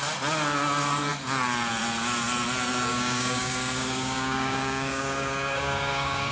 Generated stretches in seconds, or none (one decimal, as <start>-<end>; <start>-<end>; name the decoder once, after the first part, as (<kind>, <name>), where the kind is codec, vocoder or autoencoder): 2.9-6.3 (codec, DAC)